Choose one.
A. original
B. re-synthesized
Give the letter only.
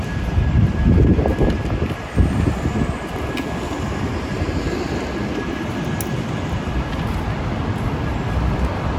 A